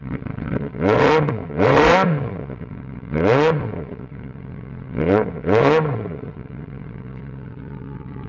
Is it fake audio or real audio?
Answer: fake